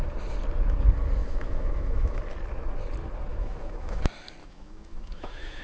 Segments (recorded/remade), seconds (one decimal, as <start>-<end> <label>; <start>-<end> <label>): 0.0-1.2 recorded; 1.2-2.2 remade; 2.2-3.3 recorded; 3.3-4.0 remade; 4.0-4.4 recorded; 4.4-5.6 remade